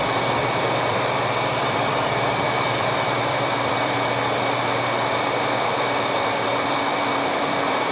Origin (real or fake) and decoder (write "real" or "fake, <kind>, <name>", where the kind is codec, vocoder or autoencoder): fake, vocoder, BigVGAN v2